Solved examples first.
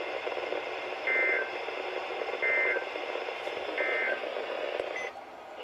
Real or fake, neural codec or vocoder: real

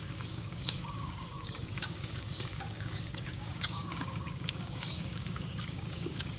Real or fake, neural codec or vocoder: fake, codec, DAC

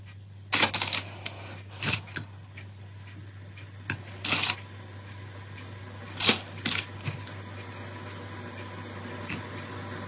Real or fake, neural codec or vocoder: real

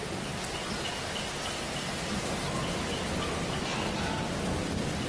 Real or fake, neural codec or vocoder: real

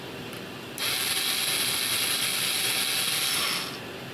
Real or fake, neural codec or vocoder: real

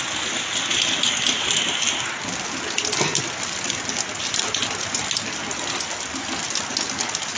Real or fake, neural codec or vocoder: real